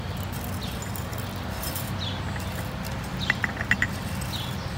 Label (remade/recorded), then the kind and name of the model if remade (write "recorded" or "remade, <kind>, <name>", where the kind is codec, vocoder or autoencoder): recorded